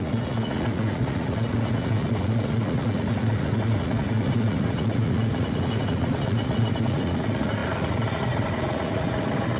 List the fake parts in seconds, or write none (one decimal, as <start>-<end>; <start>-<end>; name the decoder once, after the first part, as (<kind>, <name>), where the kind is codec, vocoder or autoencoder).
0.0-9.6 (vocoder, Vocos)